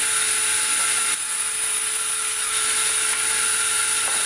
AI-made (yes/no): no